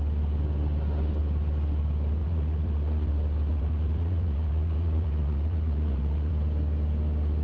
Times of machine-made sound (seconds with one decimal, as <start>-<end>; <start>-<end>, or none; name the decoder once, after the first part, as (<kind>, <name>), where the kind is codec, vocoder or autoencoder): 2.2-3.1 (vocoder, Vocos); 3.5-6.3